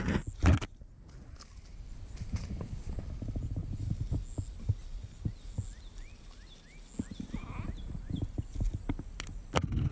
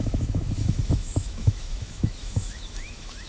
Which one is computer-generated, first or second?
second